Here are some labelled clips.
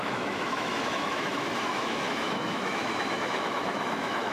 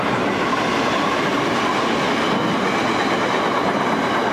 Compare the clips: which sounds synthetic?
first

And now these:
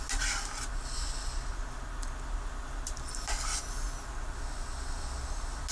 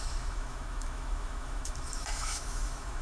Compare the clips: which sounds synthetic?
second